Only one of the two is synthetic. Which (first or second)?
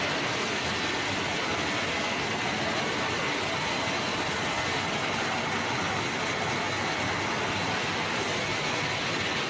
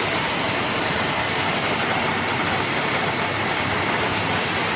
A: second